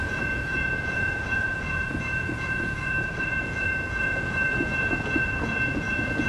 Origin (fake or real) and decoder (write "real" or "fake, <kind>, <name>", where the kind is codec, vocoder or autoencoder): fake, vocoder, Vocos